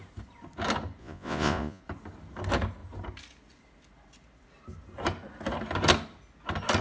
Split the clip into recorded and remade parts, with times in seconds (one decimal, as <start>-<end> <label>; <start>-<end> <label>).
0.0-1.0 recorded; 1.0-1.8 remade; 1.8-6.8 recorded